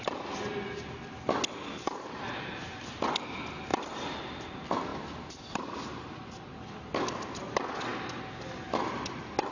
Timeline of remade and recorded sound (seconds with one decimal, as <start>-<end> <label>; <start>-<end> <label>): 0.0-4.9 recorded; 4.9-6.8 remade; 6.8-9.5 recorded